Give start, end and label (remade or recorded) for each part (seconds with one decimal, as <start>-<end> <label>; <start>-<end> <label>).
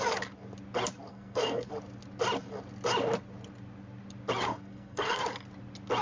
0.0-1.1 recorded; 1.1-1.7 remade; 1.7-4.5 recorded; 4.5-5.2 remade; 5.2-6.0 recorded